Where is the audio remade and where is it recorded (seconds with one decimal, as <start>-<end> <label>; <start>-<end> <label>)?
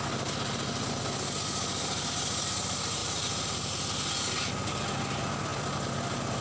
0.0-6.4 recorded